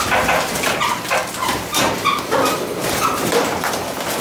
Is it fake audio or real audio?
fake